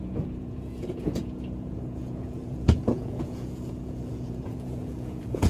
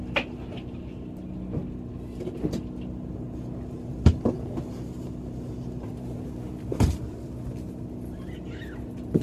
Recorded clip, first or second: second